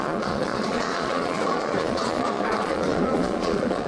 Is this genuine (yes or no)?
no